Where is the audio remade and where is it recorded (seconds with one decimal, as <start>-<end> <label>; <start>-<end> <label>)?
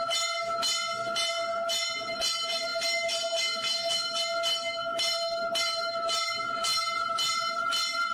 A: 0.0-8.1 recorded